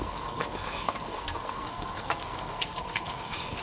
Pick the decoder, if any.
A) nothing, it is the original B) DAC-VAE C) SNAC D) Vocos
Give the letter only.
C